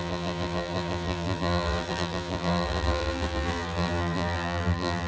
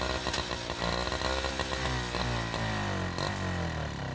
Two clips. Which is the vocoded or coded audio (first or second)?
first